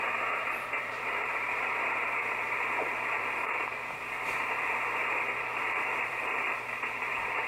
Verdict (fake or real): fake